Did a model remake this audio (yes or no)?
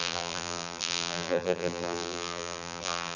yes